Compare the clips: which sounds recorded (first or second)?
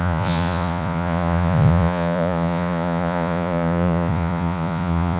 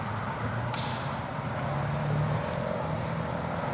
second